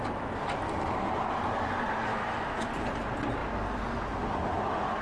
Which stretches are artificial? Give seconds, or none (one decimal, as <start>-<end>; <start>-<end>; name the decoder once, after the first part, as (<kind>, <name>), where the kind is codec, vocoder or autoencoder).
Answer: 2.1-2.7 (autoencoder, DAC-VAE)